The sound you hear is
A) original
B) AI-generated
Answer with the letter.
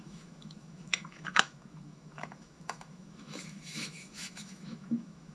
B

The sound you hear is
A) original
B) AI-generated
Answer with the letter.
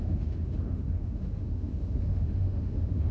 B